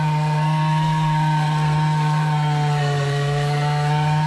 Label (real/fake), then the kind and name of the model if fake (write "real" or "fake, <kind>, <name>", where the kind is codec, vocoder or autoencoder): fake, codec, SNAC